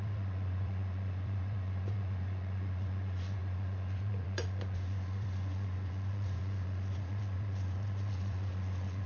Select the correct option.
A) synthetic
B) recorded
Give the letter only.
A